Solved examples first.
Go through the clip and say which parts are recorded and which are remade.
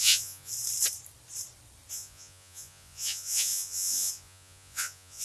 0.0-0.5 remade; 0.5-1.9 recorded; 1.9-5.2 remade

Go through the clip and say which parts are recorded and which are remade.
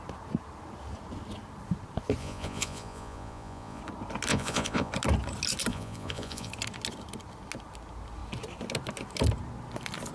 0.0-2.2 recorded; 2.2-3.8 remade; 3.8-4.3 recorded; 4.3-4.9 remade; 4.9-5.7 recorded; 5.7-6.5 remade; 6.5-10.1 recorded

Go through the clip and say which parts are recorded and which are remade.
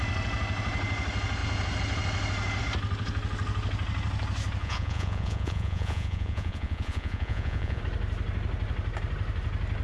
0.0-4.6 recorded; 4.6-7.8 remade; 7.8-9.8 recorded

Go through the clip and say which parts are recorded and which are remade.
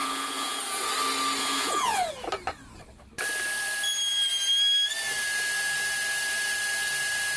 0.0-0.6 remade; 0.6-1.4 recorded; 1.4-2.1 remade; 2.1-7.4 recorded